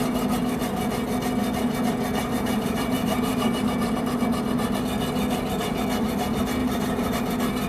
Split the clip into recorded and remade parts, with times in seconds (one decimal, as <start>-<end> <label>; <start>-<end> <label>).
0.0-2.2 recorded; 2.2-4.2 remade; 4.2-6.6 recorded; 6.6-7.2 remade; 7.2-7.7 recorded